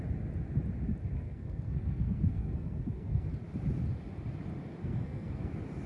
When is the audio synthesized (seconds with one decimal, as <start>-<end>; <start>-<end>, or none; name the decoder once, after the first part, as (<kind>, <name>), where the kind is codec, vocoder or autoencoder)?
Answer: 1.1-3.3 (codec, SNAC); 4.8-5.5